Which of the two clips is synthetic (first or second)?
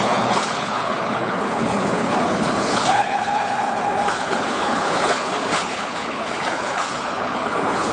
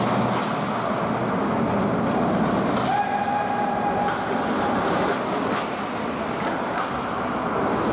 first